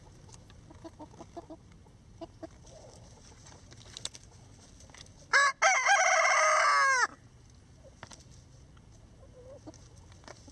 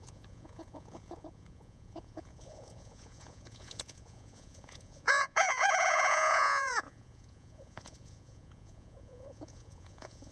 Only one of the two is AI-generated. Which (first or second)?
second